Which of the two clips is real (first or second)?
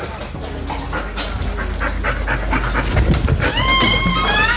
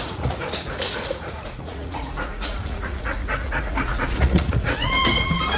first